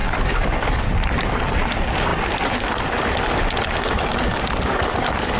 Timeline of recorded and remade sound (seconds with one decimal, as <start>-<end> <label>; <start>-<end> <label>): 0.0-0.9 remade; 0.9-5.4 recorded